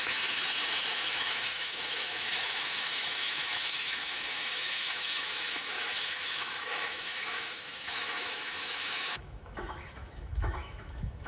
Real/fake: fake